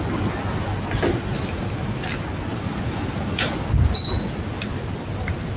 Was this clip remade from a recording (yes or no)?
no